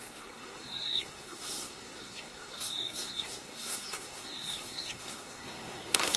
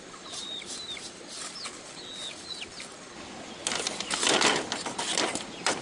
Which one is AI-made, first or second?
first